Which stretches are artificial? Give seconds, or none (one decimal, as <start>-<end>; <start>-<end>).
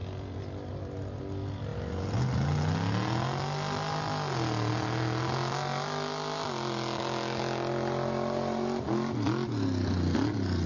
none